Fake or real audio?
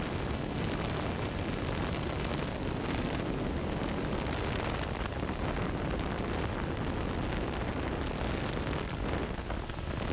real